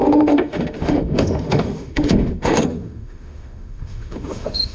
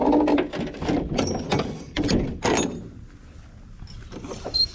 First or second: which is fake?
first